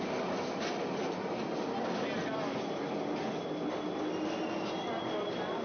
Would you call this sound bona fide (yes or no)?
yes